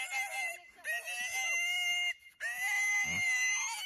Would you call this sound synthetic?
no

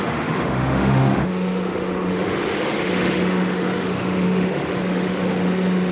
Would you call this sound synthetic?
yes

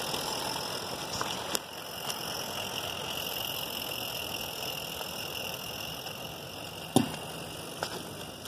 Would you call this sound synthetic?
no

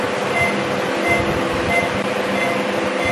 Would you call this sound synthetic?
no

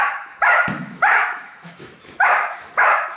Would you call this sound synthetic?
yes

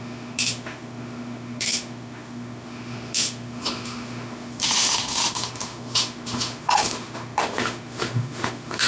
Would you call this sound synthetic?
yes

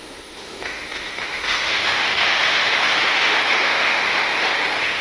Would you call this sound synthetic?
yes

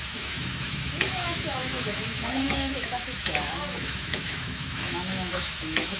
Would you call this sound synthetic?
yes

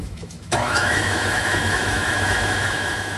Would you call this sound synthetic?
yes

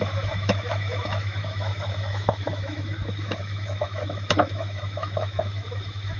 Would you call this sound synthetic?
yes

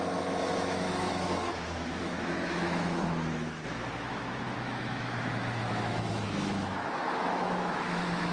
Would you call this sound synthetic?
yes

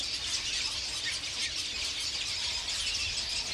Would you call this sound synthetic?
no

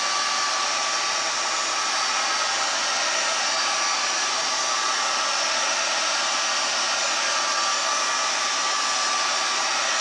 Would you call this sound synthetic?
no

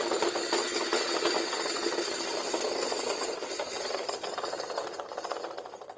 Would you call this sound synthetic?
no